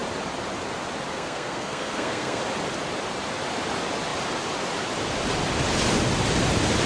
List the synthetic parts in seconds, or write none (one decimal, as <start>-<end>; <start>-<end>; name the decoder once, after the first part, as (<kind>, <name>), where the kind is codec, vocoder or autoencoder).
1.1-2.4 (codec, SNAC)